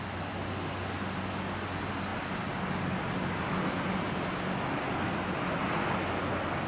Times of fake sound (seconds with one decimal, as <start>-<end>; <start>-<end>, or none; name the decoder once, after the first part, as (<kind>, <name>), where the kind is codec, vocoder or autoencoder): none